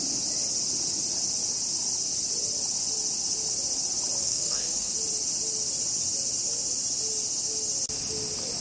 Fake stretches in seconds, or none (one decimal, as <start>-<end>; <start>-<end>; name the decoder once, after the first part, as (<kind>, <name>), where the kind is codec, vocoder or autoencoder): 4.2-4.9 (codec, SNAC)